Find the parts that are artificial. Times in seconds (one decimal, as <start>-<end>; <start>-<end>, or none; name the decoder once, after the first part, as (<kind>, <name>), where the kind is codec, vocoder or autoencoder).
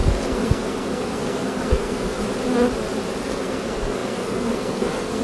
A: 0.0-2.2 (codec, SNAC); 3.2-5.2